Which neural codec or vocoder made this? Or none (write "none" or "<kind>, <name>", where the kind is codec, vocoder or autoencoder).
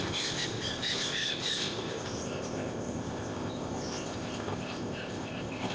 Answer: codec, ZipCodec